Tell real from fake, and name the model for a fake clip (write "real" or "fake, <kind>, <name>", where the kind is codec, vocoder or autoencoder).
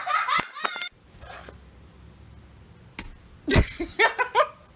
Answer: real